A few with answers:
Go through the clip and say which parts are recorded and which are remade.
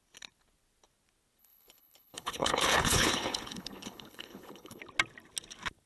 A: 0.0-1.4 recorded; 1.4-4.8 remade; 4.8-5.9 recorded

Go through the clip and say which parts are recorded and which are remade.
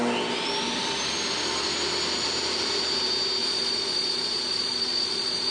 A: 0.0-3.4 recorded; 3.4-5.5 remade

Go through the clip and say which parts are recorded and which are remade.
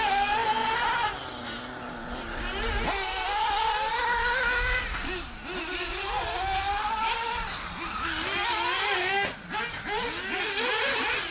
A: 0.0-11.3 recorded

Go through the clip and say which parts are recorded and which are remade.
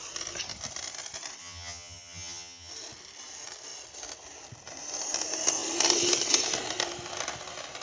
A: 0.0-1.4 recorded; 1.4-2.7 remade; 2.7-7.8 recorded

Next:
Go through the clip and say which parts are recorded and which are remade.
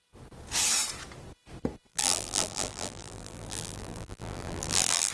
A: 0.0-1.9 recorded; 1.9-5.1 remade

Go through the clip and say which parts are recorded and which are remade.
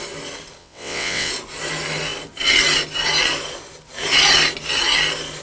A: 0.0-0.6 recorded; 0.6-1.3 remade; 1.3-5.4 recorded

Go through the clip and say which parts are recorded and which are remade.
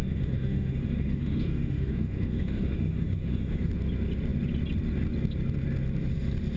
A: 0.0-3.7 remade; 3.7-6.6 recorded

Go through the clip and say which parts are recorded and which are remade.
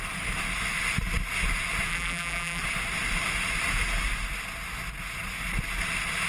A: 0.0-1.9 recorded; 1.9-2.6 remade; 2.6-6.3 recorded